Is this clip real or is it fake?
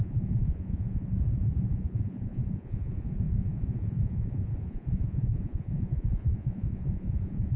fake